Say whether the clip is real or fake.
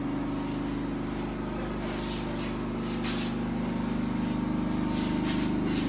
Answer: real